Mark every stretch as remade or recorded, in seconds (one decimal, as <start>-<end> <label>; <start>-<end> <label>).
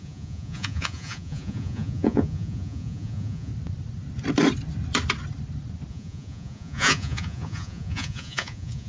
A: 0.0-3.5 remade; 3.5-5.9 recorded; 5.9-8.9 remade